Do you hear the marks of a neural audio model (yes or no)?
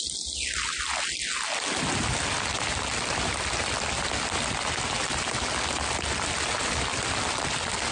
no